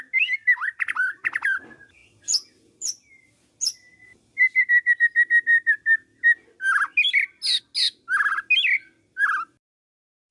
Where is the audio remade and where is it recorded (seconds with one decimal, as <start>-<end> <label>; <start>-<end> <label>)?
0.0-10.3 recorded